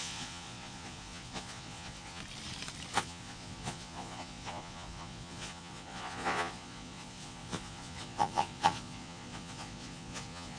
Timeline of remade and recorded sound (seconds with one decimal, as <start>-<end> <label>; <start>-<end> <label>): 0.0-2.2 remade; 2.2-2.9 recorded; 2.9-10.6 remade